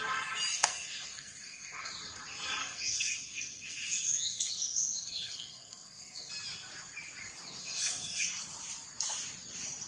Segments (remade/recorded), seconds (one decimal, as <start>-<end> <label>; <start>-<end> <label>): 0.0-0.5 recorded; 0.5-1.9 remade; 1.9-2.6 recorded; 2.6-6.3 remade; 6.3-7.6 recorded; 7.6-8.3 remade; 8.3-9.9 recorded